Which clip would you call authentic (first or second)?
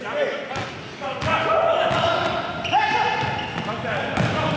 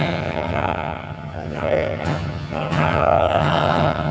first